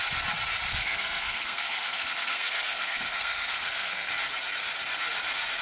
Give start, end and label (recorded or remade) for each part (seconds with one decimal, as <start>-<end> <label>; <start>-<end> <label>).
0.0-0.7 recorded; 0.7-4.1 remade; 4.1-5.6 recorded